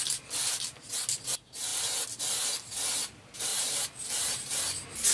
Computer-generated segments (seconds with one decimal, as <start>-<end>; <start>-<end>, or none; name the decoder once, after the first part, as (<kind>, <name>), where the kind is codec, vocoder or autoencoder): 3.5-4.6 (vocoder, BigVGAN v2)